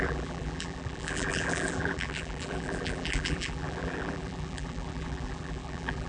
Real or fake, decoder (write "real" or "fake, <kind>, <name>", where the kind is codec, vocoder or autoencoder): fake, vocoder, BigVGAN v2